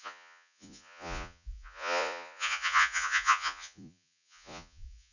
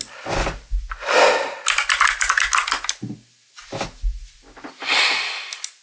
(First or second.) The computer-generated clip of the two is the first